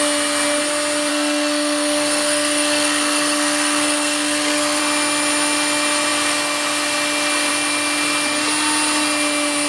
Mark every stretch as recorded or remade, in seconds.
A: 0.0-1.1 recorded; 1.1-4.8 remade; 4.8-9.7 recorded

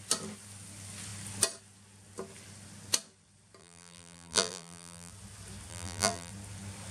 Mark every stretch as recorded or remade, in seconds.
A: 0.0-3.6 recorded; 3.6-5.1 remade; 5.1-5.7 recorded; 5.7-6.3 remade; 6.3-6.9 recorded

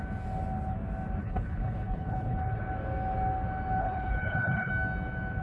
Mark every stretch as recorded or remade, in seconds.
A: 0.0-1.2 recorded; 1.2-2.6 remade; 2.6-3.8 recorded; 3.8-4.7 remade; 4.7-5.4 recorded